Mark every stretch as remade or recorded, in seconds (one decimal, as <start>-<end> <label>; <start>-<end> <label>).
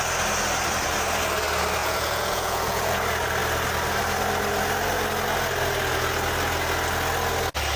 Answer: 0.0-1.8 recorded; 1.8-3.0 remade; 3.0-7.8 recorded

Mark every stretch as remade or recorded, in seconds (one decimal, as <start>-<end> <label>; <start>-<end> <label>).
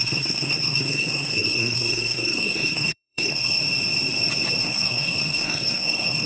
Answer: 0.0-3.6 remade; 3.6-4.6 recorded; 4.6-6.3 remade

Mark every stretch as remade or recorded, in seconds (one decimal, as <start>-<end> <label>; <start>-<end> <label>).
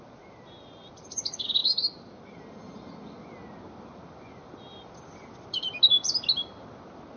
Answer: 0.0-7.2 recorded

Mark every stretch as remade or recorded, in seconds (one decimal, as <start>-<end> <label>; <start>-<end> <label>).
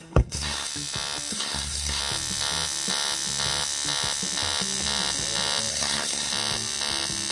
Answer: 0.0-0.7 remade; 0.7-1.3 recorded; 1.3-2.0 remade; 2.0-5.7 recorded; 5.7-6.3 remade; 6.3-7.3 recorded